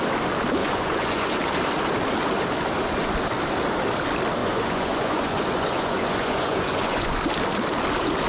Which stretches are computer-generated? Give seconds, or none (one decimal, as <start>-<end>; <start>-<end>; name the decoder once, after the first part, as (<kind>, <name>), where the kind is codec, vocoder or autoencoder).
0.6-1.4 (vocoder, Vocos); 4.4-7.2